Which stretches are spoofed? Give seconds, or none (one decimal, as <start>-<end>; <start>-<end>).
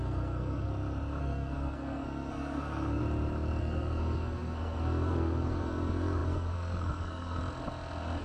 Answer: 0.0-0.7; 1.2-3.0; 3.6-7.4